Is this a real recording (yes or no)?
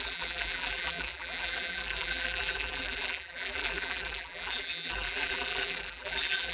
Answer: no